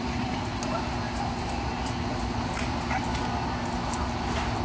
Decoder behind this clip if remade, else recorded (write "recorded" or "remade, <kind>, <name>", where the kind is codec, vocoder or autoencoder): recorded